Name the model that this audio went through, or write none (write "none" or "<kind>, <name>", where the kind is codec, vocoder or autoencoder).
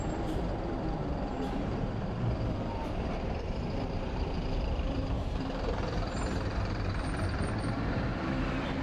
vocoder, BigVGAN v2